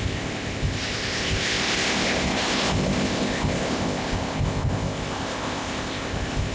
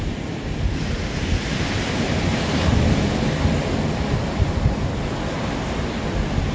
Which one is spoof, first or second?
first